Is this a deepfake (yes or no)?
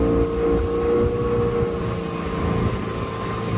no